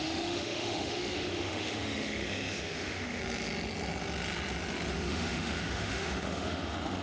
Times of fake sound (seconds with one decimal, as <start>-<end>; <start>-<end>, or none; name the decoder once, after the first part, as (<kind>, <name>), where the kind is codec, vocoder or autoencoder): 0.0-3.2 (autoencoder, DAC-VAE); 4.9-7.0